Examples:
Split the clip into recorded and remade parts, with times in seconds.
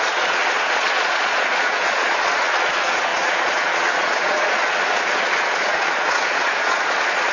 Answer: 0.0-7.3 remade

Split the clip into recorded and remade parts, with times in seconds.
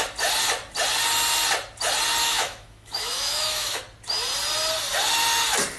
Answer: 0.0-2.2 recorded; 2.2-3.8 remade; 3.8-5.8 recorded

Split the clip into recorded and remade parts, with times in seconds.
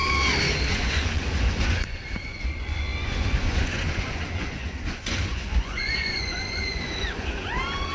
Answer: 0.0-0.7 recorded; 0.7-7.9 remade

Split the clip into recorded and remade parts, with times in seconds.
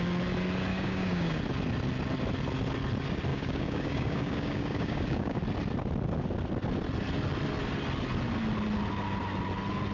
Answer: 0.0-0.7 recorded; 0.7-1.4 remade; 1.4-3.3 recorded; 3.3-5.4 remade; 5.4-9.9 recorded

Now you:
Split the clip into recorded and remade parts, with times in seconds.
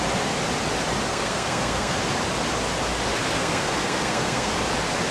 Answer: 0.0-1.1 recorded; 1.1-2.0 remade; 2.0-3.4 recorded; 3.4-4.6 remade; 4.6-5.1 recorded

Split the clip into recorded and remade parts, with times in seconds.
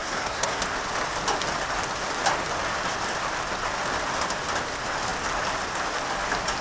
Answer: 0.0-0.6 remade; 0.6-6.6 recorded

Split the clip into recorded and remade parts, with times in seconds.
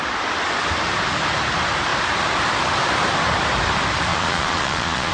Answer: 0.0-4.1 recorded; 4.1-5.1 remade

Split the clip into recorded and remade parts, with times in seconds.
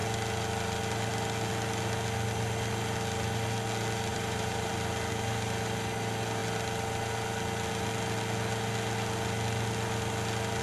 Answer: 0.0-4.1 recorded; 4.1-4.7 remade; 4.7-10.6 recorded